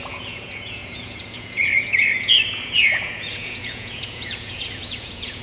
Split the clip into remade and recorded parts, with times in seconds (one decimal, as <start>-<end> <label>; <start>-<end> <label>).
0.0-5.4 remade